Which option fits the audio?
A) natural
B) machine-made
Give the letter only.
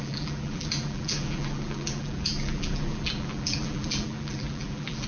B